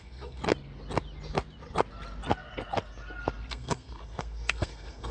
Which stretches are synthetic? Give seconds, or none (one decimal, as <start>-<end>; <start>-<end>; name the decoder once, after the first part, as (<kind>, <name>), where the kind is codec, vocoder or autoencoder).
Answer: 0.0-0.4 (codec, SNAC); 3.5-5.1